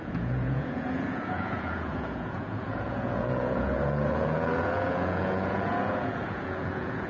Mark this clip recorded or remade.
remade